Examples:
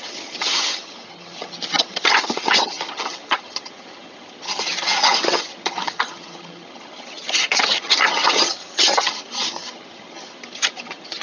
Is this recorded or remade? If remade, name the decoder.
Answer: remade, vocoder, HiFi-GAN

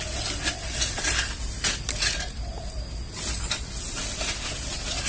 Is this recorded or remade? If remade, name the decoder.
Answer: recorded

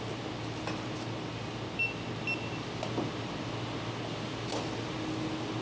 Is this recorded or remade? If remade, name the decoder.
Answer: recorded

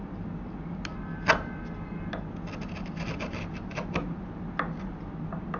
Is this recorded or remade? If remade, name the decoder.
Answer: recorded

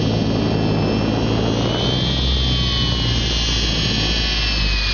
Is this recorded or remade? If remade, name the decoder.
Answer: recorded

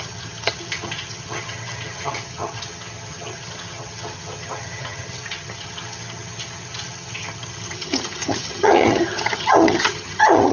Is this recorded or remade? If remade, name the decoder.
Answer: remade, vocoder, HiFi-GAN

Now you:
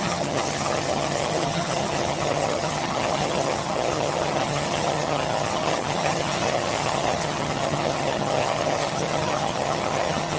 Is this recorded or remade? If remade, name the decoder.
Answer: remade, vocoder, HiFi-GAN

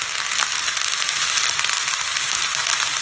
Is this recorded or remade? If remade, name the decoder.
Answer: recorded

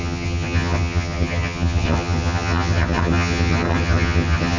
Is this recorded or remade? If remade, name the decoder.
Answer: remade, vocoder, HiFi-GAN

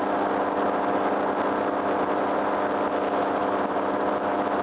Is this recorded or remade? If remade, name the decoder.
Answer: recorded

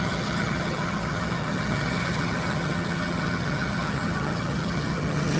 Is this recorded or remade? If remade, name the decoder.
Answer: remade, vocoder, HiFi-GAN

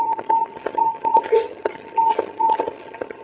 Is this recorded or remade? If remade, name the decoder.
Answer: remade, vocoder, HiFi-GAN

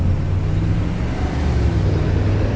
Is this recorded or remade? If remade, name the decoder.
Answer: recorded